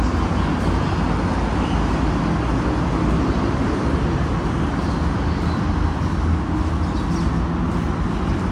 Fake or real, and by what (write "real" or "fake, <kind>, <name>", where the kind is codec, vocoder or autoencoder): real